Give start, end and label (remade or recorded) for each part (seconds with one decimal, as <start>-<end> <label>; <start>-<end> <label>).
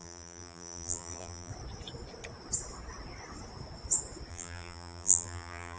0.0-1.5 remade; 1.5-4.3 recorded; 4.3-5.8 remade